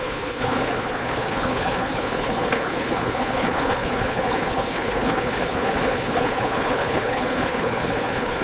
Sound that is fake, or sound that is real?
fake